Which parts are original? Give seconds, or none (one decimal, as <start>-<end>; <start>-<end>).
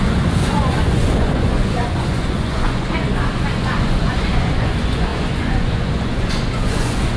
none